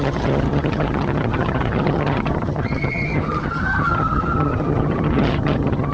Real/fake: fake